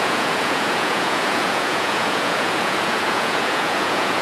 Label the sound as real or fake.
fake